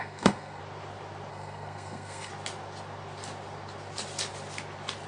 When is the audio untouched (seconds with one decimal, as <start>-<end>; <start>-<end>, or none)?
0.6-1.3; 2.3-5.1